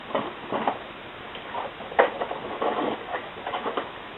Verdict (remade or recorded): recorded